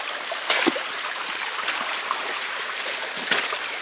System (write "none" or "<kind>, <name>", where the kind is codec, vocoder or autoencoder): none